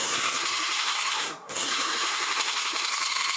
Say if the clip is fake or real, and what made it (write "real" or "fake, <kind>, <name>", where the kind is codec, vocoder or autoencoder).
fake, codec, SNAC